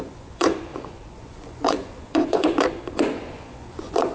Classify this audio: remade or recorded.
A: remade